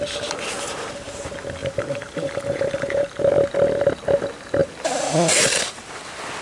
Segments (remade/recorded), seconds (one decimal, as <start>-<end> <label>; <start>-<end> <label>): 0.0-1.6 recorded; 1.6-3.1 remade; 3.1-4.6 recorded; 4.6-6.0 remade; 6.0-6.4 recorded